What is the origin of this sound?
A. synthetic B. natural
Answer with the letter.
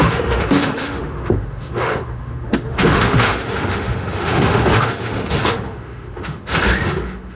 A